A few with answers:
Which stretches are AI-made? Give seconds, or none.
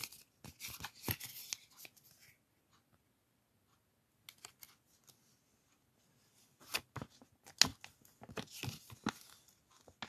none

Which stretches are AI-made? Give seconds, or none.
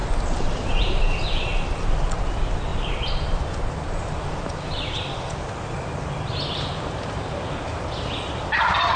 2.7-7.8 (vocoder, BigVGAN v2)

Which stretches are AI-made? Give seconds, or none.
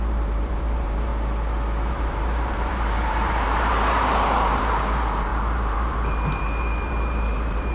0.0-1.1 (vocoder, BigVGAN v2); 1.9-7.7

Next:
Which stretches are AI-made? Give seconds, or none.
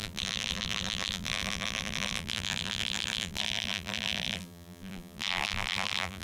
0.0-6.2 (vocoder, BigVGAN v2)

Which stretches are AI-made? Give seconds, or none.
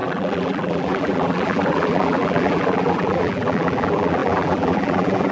0.0-5.3 (vocoder, BigVGAN v2)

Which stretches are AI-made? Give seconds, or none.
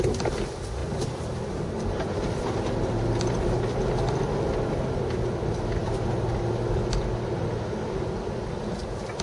0.8-2.4 (vocoder, BigVGAN v2); 5.8-6.5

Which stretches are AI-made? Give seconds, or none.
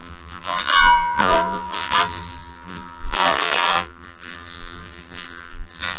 0.0-6.0 (vocoder, BigVGAN v2)